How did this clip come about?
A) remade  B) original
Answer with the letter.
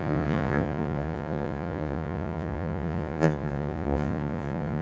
A